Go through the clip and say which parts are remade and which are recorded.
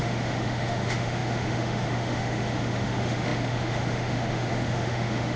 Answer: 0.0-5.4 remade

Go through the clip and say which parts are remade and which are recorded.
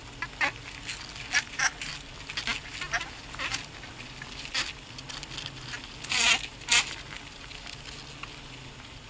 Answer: 0.0-9.1 recorded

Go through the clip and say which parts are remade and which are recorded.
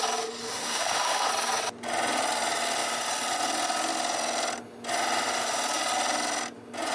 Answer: 0.0-0.4 recorded; 0.4-1.3 remade; 1.3-6.9 recorded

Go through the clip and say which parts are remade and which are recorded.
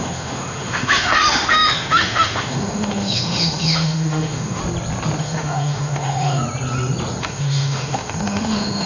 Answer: 0.0-4.6 remade; 4.6-5.2 recorded; 5.2-6.4 remade; 6.4-7.2 recorded; 7.2-8.9 remade